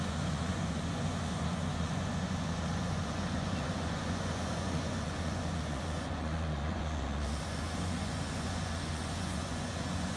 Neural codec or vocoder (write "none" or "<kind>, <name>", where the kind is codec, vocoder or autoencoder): vocoder, Vocos